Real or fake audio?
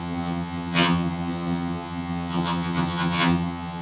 fake